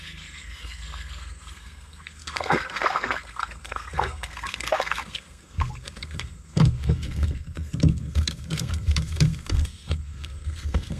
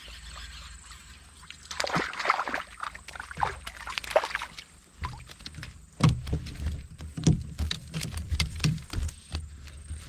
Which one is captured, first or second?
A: second